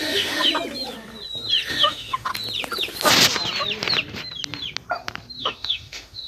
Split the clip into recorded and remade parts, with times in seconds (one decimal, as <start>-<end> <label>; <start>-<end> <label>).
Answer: 0.0-0.5 remade; 0.5-1.7 recorded; 1.7-2.3 remade; 2.3-5.4 recorded; 5.4-6.3 remade